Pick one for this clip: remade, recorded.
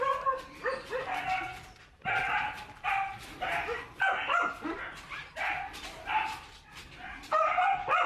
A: recorded